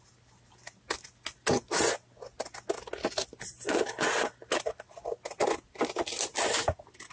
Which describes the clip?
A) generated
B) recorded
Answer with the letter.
B